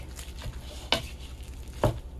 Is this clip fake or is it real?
real